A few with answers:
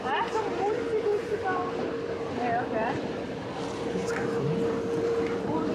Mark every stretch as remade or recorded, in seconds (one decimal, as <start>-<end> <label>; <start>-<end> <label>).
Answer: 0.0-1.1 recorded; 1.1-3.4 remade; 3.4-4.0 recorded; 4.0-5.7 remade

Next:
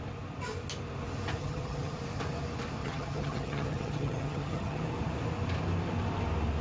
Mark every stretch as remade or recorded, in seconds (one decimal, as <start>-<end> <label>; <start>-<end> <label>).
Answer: 0.0-1.4 recorded; 1.4-2.0 remade; 2.0-2.8 recorded; 2.8-4.8 remade; 4.8-6.6 recorded

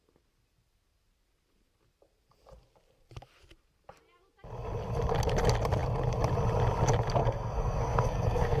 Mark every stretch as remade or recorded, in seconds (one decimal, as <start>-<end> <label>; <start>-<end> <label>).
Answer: 0.0-7.2 recorded; 7.2-8.6 remade

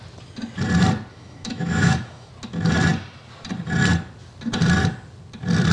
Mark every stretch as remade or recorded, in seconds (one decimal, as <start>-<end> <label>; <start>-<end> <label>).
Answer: 0.0-1.1 recorded; 1.1-2.3 remade; 2.3-5.7 recorded

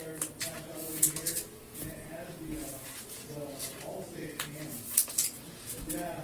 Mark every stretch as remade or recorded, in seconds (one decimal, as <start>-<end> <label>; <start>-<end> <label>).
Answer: 0.0-0.9 recorded; 0.9-4.6 remade; 4.6-6.2 recorded